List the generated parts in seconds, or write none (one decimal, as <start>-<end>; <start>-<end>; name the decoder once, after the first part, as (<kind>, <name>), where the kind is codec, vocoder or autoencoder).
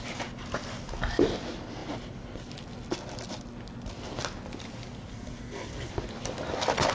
5.1-5.9 (codec, SNAC)